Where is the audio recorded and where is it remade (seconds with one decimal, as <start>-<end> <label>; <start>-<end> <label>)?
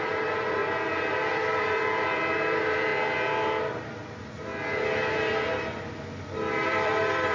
0.0-0.6 remade; 0.6-1.3 recorded; 1.3-2.9 remade; 2.9-3.7 recorded; 3.7-4.5 remade; 4.5-6.7 recorded; 6.7-7.3 remade